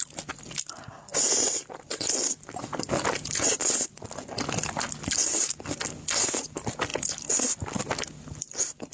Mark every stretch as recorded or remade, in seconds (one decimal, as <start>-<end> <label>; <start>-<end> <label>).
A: 0.0-8.9 recorded